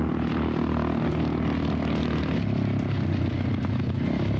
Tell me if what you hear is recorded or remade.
recorded